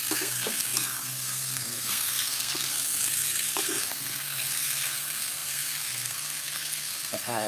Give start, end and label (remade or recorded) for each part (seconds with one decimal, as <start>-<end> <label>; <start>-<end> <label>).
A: 0.0-7.5 remade